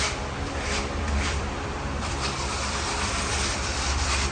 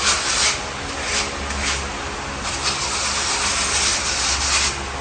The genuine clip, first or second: second